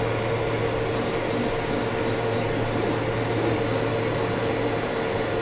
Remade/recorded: recorded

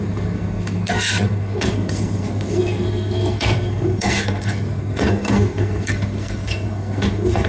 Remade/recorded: remade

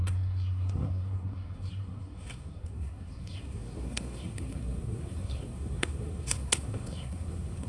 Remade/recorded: remade